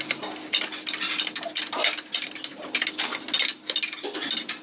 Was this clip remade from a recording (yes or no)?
no